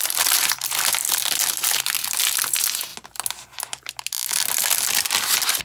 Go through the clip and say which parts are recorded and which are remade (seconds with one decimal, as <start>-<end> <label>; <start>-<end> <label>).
0.0-1.0 recorded; 1.0-1.8 remade; 1.8-5.6 recorded